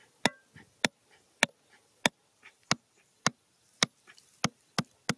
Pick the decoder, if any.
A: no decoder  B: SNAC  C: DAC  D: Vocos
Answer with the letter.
A